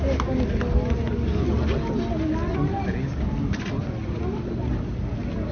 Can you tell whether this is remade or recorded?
recorded